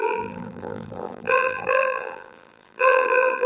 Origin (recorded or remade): remade